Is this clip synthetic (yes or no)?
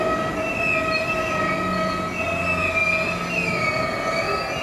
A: no